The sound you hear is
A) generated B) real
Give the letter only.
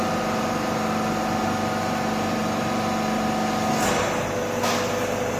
B